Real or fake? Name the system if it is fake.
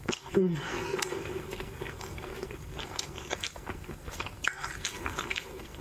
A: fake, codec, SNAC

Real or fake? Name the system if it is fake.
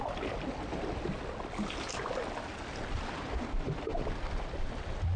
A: real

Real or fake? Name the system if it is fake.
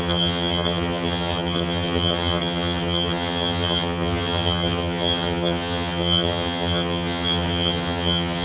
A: fake, vocoder, HiFi-GAN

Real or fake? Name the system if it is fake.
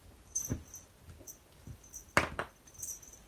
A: real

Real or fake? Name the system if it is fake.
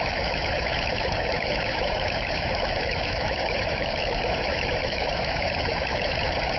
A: fake, autoencoder, DAC-VAE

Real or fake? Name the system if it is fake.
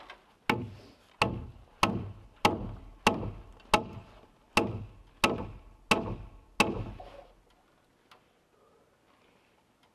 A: real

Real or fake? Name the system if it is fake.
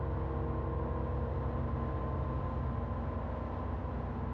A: real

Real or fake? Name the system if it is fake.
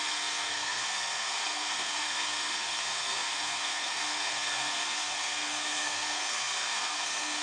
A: fake, codec, SNAC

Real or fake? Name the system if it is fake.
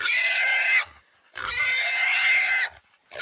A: real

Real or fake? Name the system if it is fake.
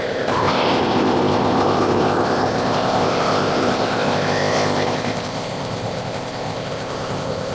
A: fake, codec, ZipCodec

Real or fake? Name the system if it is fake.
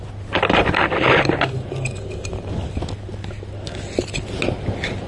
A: real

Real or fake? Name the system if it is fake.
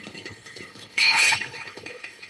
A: fake, codec, HILCodec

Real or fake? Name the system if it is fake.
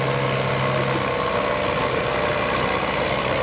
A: real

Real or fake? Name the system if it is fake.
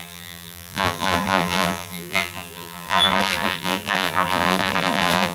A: fake, vocoder, BigVGAN v2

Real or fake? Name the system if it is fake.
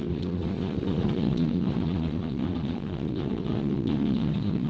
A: fake, vocoder, Vocos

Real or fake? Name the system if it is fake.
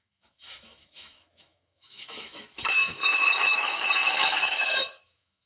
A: fake, autoencoder, DAC-VAE